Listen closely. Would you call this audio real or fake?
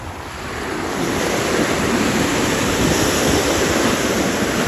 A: real